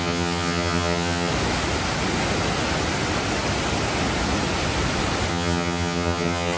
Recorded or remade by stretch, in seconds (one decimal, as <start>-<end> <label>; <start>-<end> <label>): 0.0-1.3 remade; 1.3-5.3 recorded; 5.3-6.6 remade